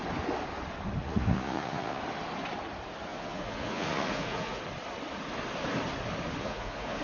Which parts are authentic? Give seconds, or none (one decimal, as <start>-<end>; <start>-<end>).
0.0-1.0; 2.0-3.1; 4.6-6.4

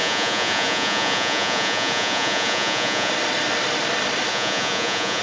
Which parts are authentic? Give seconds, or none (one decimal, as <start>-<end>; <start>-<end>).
3.1-4.3

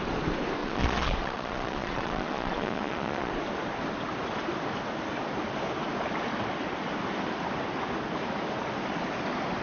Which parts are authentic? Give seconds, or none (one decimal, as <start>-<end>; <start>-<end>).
0.0-0.6; 3.3-9.6

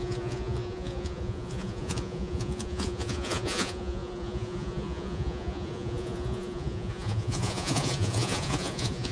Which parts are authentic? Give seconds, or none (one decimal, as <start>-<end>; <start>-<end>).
none

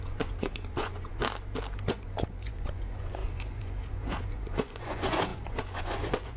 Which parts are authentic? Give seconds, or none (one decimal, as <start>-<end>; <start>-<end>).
1.2-1.9

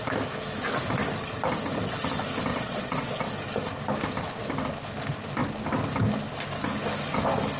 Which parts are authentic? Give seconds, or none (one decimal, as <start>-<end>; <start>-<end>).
0.0-2.5; 3.3-7.6

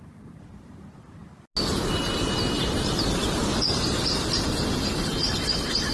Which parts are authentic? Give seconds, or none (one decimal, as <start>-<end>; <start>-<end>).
0.0-5.9